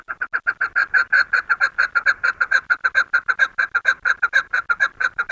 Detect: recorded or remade recorded